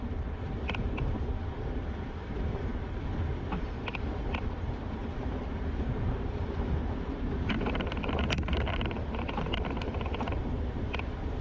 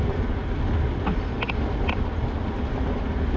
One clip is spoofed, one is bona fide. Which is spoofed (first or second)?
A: first